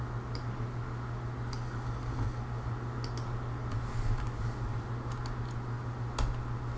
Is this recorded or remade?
recorded